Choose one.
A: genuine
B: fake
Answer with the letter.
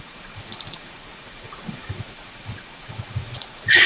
B